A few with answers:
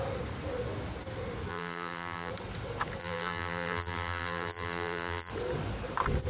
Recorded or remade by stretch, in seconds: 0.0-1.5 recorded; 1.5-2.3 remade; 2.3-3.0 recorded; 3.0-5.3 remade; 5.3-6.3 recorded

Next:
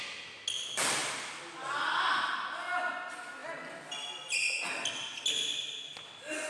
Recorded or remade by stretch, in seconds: 0.0-6.5 recorded